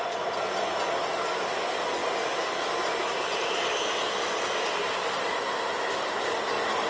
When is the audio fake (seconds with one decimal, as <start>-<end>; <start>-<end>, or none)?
none